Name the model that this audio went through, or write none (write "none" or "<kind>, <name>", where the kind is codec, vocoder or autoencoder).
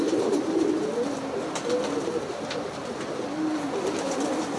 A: none